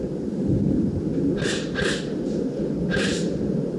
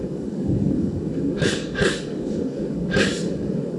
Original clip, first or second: first